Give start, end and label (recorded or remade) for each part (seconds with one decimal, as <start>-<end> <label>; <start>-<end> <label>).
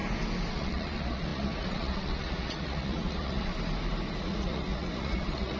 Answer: 0.0-0.5 recorded; 0.5-3.5 remade; 3.5-4.2 recorded; 4.2-5.6 remade